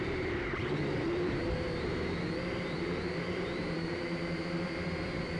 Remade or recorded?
remade